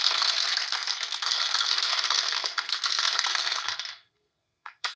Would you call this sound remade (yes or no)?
yes